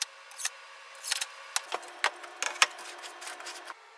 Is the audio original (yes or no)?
yes